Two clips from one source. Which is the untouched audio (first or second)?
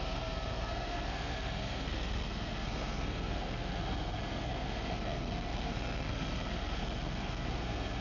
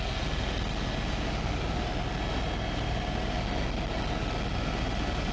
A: second